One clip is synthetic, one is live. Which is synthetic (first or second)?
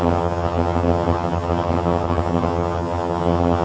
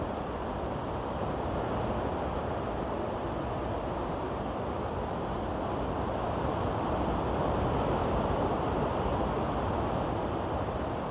first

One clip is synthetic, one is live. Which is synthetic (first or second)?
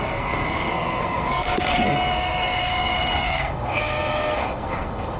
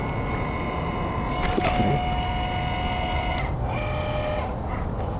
first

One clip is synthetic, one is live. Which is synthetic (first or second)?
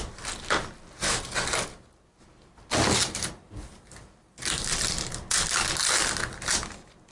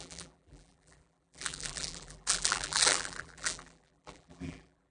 second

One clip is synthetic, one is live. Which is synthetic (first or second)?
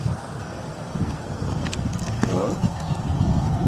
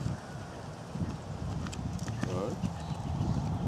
first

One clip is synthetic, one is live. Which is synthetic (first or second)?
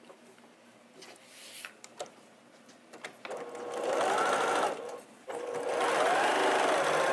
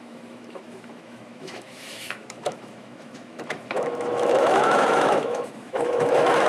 second